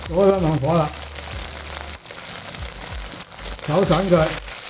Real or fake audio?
real